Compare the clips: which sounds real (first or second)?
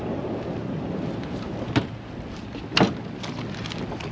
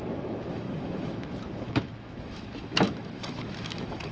first